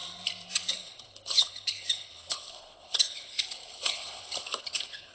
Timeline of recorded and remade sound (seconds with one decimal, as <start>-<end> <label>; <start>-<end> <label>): 0.0-0.6 recorded; 0.6-5.1 remade